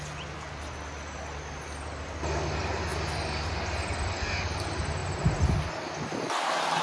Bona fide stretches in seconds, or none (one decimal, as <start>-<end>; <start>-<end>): 0.0-6.8